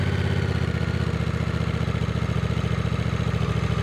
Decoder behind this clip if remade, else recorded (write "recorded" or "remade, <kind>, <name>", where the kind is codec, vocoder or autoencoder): recorded